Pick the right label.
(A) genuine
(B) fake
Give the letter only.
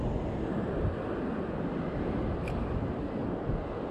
A